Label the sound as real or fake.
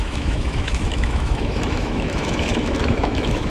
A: fake